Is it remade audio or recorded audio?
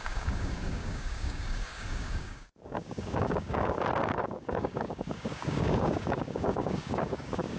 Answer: remade